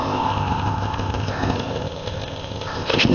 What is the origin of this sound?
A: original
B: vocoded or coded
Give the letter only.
B